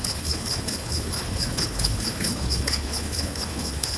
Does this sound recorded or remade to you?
remade